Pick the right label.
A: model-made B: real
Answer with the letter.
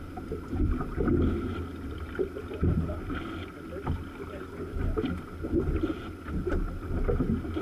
B